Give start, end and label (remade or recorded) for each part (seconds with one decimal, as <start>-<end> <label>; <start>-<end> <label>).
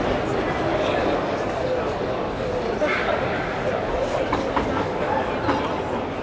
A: 0.0-0.7 recorded; 0.7-2.6 remade; 2.6-3.0 recorded; 3.0-5.3 remade; 5.3-6.2 recorded